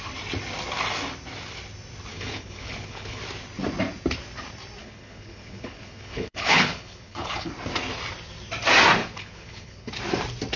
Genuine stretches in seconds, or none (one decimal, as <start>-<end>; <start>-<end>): 0.0-2.1; 3.2-4.8; 7.5-9.0; 9.9-10.6